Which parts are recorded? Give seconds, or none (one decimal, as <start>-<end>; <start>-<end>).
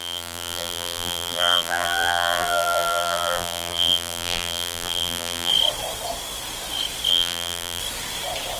5.5-7.1; 7.8-8.6